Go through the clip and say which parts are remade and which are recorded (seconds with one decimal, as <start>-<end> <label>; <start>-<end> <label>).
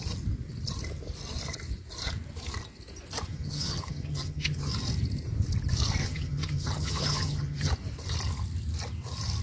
0.0-3.3 recorded; 3.3-4.7 remade; 4.7-6.0 recorded; 6.0-7.7 remade; 7.7-9.4 recorded